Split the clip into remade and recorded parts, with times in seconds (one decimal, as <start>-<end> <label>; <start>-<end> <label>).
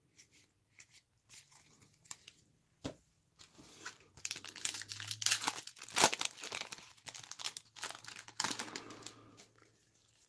0.0-10.3 recorded